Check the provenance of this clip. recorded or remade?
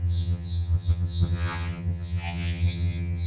remade